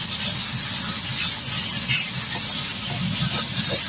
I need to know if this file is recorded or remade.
recorded